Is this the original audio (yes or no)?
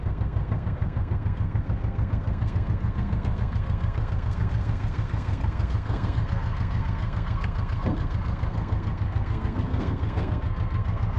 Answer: no